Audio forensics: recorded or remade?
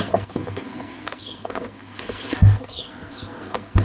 remade